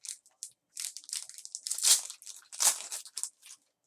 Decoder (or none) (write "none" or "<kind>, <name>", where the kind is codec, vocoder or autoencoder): none